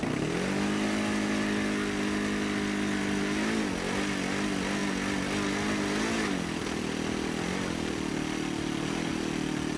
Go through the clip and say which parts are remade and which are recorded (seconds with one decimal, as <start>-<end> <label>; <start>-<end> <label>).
0.0-9.8 recorded